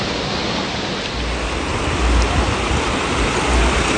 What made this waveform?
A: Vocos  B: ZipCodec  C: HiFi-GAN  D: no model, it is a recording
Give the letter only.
D